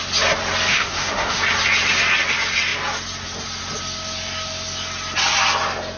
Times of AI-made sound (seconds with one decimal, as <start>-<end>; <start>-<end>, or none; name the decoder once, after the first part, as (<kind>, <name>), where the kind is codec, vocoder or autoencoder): 0.7-1.4 (autoencoder, DAC-VAE)